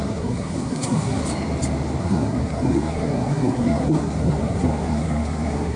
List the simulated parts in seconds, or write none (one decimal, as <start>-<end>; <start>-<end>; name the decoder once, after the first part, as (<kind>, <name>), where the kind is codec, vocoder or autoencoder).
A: 0.0-1.2 (codec, SNAC); 2.0-5.8